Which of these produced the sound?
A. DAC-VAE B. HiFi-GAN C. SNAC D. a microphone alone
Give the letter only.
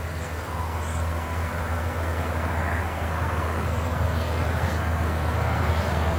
C